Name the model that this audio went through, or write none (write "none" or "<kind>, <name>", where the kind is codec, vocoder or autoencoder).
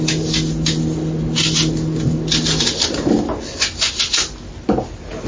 none